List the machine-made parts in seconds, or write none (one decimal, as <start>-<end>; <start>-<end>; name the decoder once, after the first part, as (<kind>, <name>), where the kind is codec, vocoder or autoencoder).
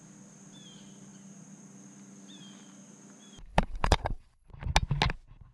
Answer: 3.5-4.5 (vocoder, Vocos)